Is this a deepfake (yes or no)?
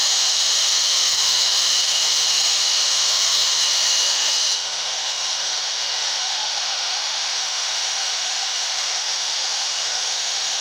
yes